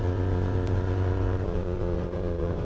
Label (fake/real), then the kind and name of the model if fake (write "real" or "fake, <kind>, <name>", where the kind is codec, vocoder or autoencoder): fake, vocoder, Vocos